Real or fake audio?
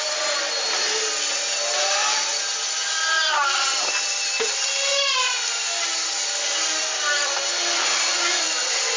real